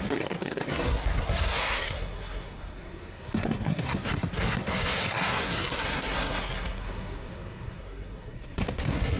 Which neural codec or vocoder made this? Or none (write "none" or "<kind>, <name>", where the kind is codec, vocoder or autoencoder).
codec, SNAC